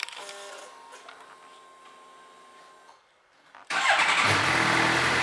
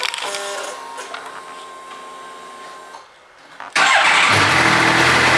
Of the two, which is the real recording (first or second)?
second